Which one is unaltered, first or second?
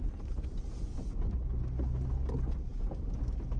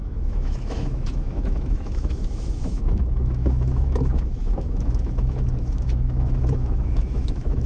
first